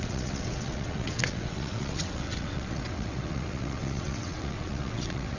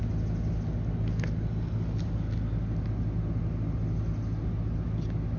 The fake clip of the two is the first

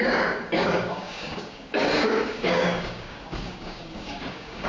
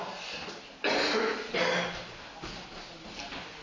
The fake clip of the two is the first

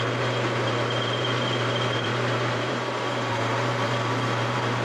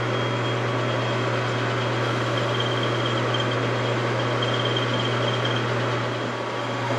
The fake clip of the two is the first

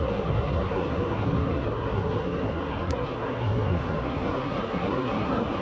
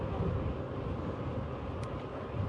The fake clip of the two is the first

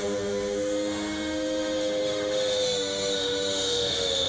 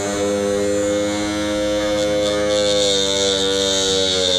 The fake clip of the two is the first